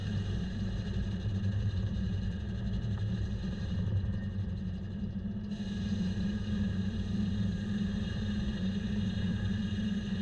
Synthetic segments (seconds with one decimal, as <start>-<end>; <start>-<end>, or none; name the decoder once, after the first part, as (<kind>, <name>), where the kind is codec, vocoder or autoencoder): 0.0-10.2 (vocoder, BigVGAN v2)